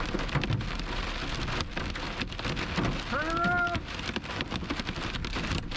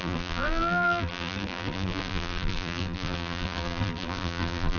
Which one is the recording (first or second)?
first